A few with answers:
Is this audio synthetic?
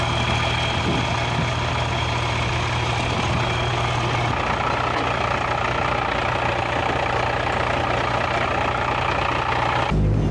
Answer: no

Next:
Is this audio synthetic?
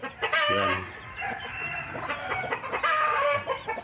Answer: no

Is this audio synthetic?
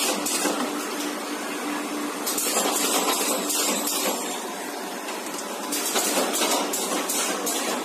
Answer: no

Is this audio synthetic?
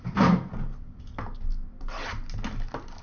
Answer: no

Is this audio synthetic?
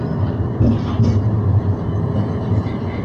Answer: no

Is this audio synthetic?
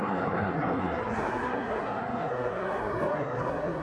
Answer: yes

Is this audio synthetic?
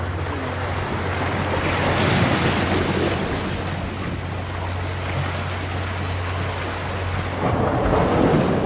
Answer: no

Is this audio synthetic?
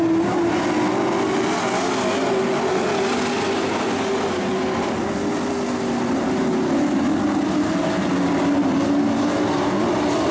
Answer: no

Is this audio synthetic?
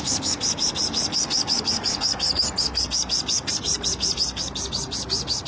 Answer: no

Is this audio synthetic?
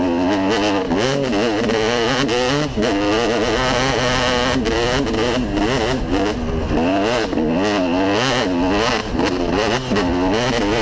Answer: no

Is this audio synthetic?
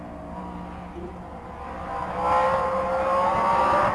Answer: no